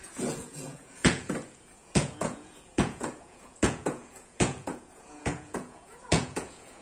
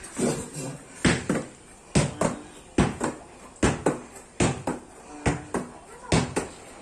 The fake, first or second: first